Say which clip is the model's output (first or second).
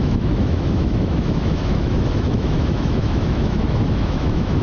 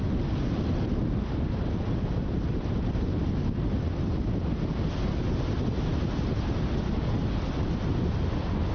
first